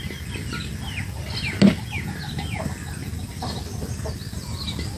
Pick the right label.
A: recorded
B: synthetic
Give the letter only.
A